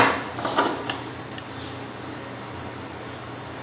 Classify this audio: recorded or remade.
recorded